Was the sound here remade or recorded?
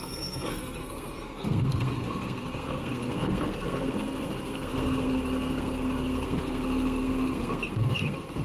remade